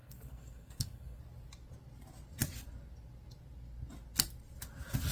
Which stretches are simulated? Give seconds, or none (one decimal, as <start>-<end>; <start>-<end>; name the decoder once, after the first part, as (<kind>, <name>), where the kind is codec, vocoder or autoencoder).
0.0-1.2 (codec, SNAC)